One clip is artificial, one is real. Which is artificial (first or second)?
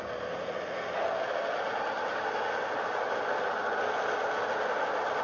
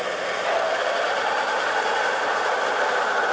second